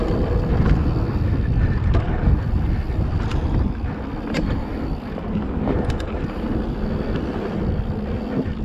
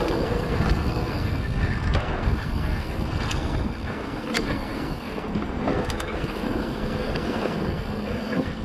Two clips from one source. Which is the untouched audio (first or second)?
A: first